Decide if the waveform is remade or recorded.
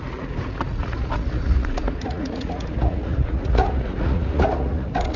remade